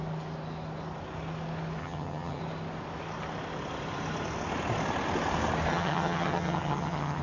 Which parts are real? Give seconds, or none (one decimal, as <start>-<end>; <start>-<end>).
0.0-1.8; 2.4-5.7